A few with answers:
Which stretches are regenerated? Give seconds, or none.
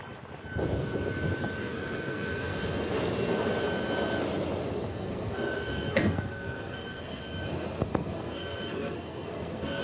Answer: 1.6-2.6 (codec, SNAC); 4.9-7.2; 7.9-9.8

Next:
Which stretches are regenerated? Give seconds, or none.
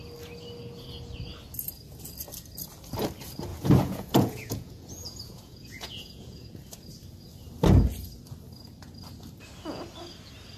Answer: 3.5-6.6 (vocoder, Vocos)